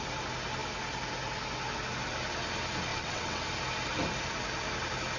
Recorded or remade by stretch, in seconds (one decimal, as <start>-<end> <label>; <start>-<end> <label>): 0.0-2.9 recorded; 2.9-3.4 remade; 3.4-5.2 recorded

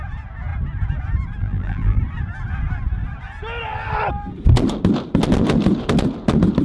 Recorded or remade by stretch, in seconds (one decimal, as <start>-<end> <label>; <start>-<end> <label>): 0.0-1.4 recorded; 1.4-2.0 remade; 2.0-6.6 recorded

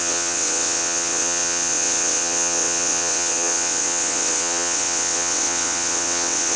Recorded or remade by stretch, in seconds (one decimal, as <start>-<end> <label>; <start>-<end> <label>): 0.0-6.6 remade

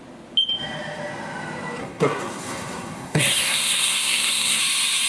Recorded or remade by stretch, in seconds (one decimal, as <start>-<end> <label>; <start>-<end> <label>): 0.0-1.8 recorded; 1.8-4.6 remade; 4.6-5.1 recorded

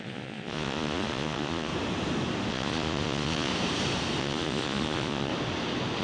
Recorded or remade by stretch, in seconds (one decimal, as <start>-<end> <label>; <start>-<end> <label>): 0.0-1.7 remade; 1.7-2.5 recorded; 2.5-3.5 remade; 3.5-4.2 recorded; 4.2-5.3 remade; 5.3-6.0 recorded

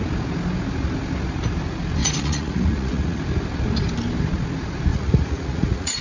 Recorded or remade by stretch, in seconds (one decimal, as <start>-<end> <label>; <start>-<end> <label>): 0.0-2.0 recorded; 2.0-3.2 remade; 3.2-4.9 recorded; 4.9-6.0 remade

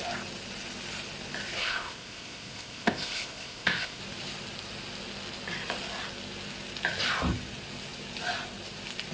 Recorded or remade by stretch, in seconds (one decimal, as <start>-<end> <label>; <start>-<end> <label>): 0.0-1.6 recorded; 1.6-4.0 remade; 4.0-9.1 recorded